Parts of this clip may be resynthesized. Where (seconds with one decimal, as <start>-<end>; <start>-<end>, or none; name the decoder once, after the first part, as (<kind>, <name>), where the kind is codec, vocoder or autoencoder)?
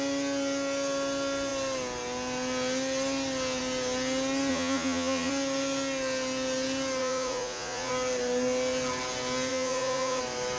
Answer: 4.5-5.3 (vocoder, Vocos); 7.0-7.9; 9.5-10.2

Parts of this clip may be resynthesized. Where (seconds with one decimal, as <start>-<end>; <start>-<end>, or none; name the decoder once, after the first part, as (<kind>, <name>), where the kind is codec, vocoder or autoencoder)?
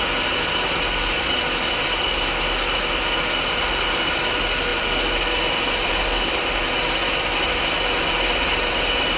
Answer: none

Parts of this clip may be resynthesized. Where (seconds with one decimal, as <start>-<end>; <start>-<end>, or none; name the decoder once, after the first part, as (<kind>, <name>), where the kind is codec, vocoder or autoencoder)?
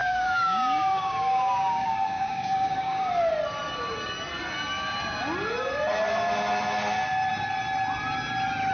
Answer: 0.0-3.1 (codec, DAC)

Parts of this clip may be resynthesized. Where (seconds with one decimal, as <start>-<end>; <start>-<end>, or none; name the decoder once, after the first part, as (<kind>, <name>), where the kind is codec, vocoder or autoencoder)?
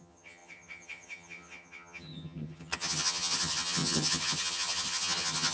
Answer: 0.0-5.5 (vocoder, HiFi-GAN)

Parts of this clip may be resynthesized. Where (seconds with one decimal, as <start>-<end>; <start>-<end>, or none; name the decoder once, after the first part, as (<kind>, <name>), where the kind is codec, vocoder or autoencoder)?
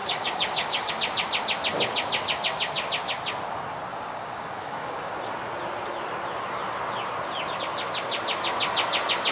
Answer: 0.0-0.9 (codec, DAC); 3.9-5.1